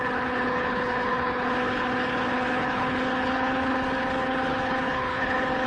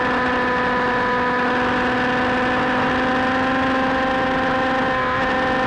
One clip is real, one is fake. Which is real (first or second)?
second